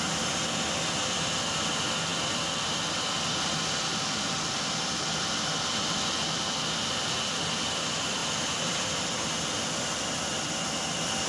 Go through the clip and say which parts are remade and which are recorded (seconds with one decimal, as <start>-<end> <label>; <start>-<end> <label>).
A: 0.0-2.1 recorded; 2.1-2.7 remade; 2.7-3.9 recorded; 3.9-5.0 remade; 5.0-8.2 recorded; 8.2-8.8 remade; 8.8-11.3 recorded